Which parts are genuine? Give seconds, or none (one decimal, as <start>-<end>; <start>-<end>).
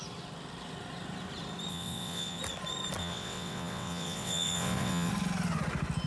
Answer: 0.0-1.7; 2.4-3.0; 5.1-6.1